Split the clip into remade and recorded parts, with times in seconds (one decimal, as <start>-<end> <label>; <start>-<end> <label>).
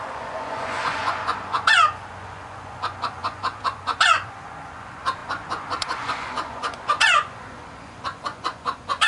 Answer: 0.0-9.1 remade